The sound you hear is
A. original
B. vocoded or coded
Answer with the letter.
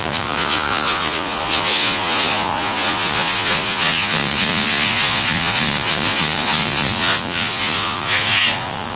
B